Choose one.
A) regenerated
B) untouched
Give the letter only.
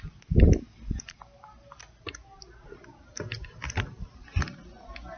B